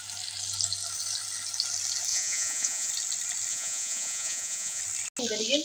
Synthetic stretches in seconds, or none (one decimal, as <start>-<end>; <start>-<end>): 2.1-2.9; 3.5-4.8